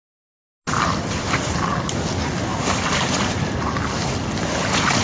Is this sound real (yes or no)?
yes